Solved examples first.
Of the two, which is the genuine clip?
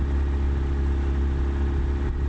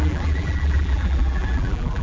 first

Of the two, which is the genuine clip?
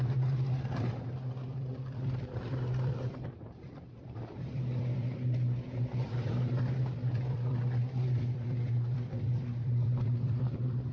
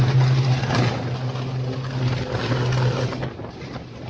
second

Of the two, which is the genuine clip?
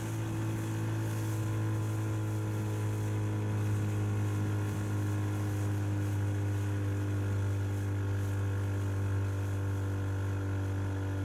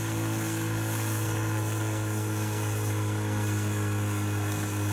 first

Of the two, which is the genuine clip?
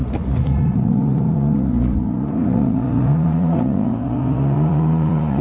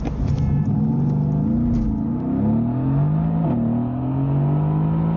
second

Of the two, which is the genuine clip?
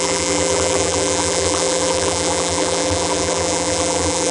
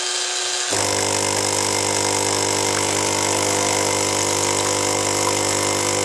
second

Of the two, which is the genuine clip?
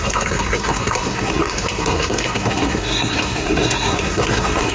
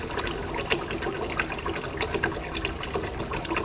second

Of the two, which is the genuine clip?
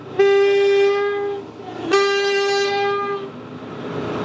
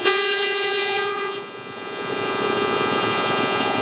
first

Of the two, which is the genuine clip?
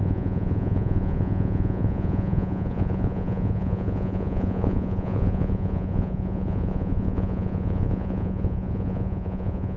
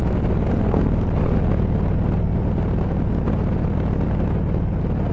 second